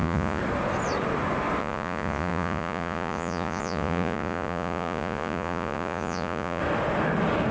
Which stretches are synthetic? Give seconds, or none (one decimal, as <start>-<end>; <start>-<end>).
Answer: 0.0-0.4; 1.6-6.6

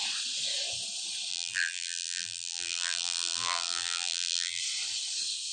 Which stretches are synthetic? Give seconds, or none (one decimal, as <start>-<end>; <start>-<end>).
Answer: 1.3-4.6

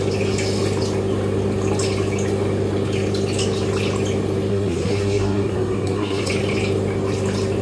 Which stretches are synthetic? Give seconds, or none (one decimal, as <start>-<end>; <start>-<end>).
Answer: 4.5-6.3

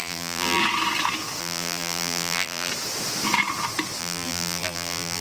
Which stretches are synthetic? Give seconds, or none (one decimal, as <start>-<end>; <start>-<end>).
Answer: 0.0-0.6; 1.4-2.7; 4.0-5.2

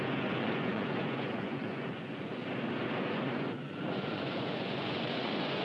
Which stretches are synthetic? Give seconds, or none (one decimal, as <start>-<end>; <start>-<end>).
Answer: 0.0-2.3; 3.0-5.6